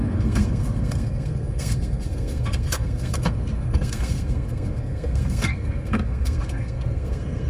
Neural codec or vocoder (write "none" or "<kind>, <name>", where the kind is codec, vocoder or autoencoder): codec, SNAC